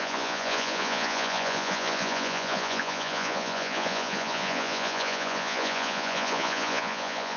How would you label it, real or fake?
fake